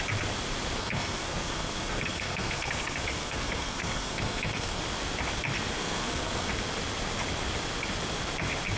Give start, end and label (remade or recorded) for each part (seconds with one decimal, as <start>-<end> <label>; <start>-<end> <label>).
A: 0.0-0.8 recorded; 0.8-4.8 remade; 4.8-5.8 recorded; 5.8-6.5 remade; 6.5-8.8 recorded